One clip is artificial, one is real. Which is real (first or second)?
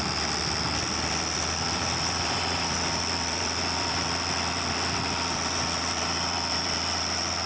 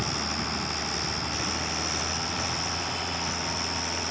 second